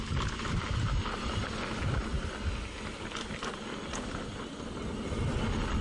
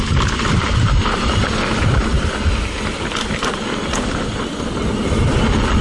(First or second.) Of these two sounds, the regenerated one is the second